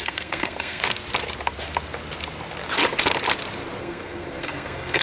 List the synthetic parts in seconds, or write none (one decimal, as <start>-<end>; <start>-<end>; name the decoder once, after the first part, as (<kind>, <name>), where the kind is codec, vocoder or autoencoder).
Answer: 0.0-0.8 (codec, SNAC); 3.8-5.0